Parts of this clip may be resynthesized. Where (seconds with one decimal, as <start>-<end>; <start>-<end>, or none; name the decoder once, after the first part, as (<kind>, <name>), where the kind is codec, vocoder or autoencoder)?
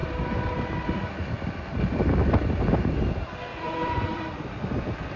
3.5-4.2 (vocoder, Vocos)